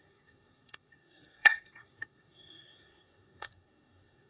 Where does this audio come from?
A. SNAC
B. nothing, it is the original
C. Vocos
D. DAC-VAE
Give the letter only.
A